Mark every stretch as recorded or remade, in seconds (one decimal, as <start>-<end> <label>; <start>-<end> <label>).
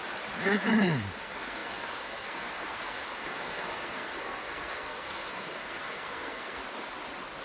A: 0.0-1.2 recorded; 1.2-6.6 remade; 6.6-7.4 recorded